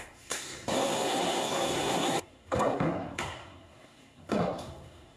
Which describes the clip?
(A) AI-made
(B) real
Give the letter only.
A